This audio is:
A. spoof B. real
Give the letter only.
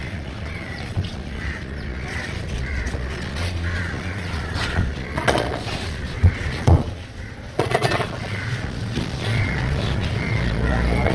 A